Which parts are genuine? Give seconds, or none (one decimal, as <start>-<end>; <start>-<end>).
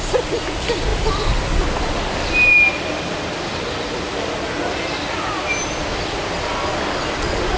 0.0-7.6